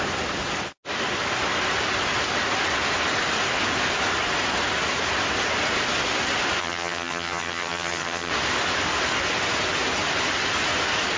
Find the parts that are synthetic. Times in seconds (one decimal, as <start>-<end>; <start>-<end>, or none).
6.6-8.3